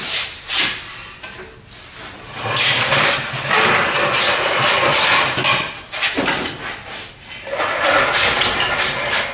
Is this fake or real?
real